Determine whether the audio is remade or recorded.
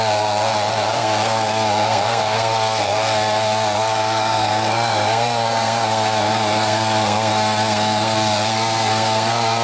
remade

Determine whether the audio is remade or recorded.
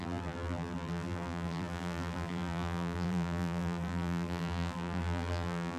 remade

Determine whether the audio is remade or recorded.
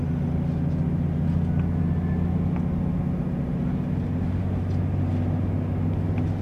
recorded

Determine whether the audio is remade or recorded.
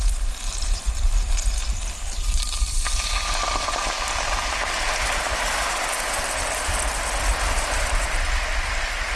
recorded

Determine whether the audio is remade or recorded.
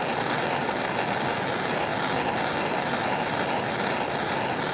recorded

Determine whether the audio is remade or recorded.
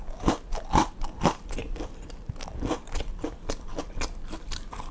recorded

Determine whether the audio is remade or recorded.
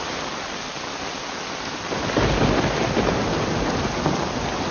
recorded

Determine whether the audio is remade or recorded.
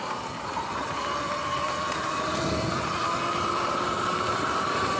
recorded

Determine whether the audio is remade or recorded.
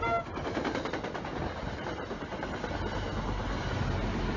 recorded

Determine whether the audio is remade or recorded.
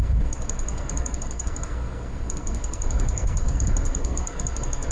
remade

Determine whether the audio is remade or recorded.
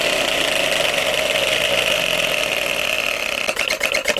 recorded